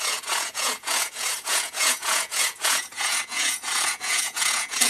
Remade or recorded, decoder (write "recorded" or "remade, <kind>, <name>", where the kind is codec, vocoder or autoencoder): remade, vocoder, Vocos